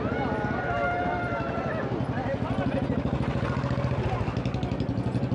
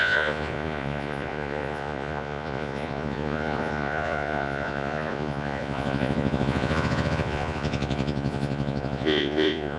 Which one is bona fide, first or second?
first